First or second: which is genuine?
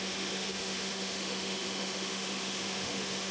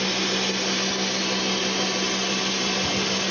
second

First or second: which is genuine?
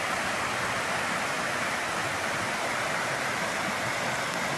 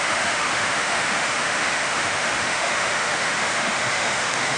first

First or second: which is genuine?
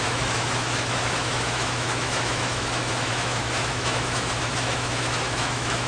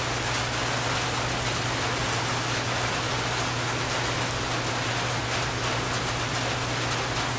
second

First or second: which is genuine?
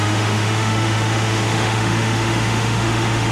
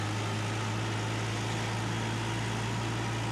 second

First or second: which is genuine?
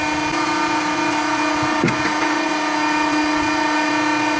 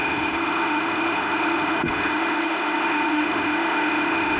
first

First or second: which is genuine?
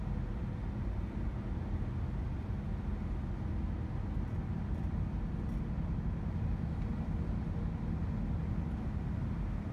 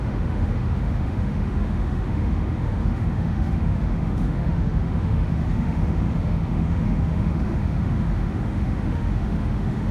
first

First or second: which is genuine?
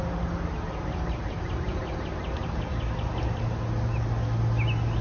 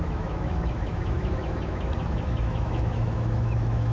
first